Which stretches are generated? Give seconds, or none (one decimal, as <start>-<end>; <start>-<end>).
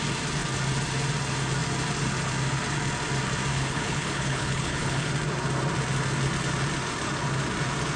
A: 3.5-5.1